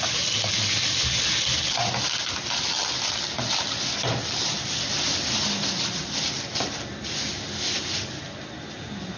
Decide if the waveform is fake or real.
real